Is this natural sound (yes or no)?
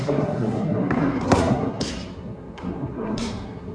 no